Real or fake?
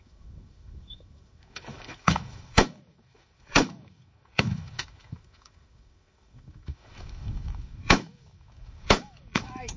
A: fake